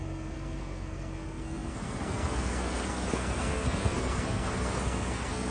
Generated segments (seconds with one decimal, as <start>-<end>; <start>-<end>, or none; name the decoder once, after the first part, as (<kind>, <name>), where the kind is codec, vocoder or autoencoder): 0.0-5.5 (codec, SNAC)